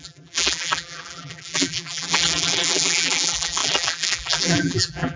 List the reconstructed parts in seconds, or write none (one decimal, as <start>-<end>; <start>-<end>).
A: 0.0-5.2